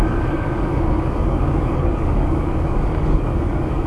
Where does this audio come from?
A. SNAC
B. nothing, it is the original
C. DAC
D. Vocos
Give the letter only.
C